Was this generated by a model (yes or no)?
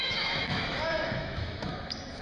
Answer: yes